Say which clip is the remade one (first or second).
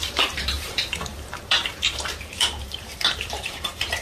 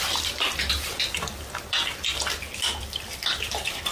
first